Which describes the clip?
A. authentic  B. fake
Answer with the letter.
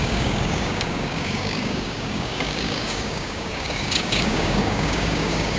B